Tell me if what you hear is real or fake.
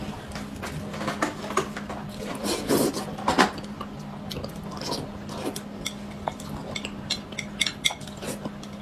real